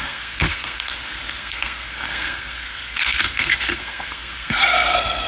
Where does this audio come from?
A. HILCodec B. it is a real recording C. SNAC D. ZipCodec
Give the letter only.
C